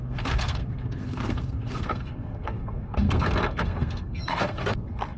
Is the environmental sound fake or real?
fake